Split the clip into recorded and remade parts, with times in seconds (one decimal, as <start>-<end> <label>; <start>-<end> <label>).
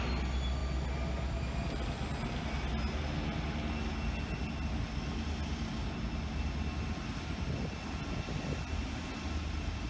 0.0-9.9 recorded